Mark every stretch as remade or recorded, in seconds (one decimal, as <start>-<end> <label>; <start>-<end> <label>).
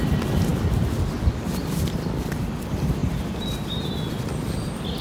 0.0-5.0 recorded